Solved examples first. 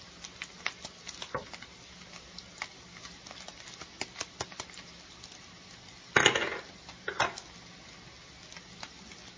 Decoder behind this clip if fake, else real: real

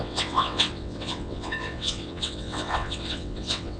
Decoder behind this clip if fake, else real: fake, vocoder, WaveNeXt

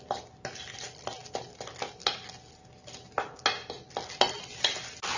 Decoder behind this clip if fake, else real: real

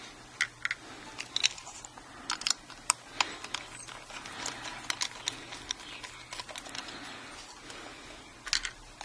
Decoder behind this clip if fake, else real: real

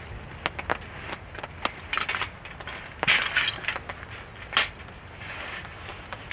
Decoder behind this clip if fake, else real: real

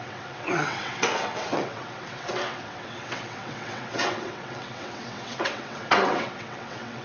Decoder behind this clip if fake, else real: fake, vocoder, WaveNeXt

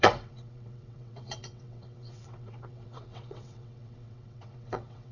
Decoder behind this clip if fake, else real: fake, vocoder, WaveNeXt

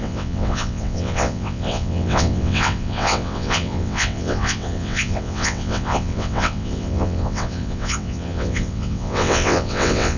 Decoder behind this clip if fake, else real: fake, vocoder, WaveNeXt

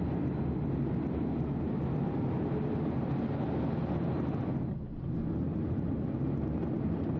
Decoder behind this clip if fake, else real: real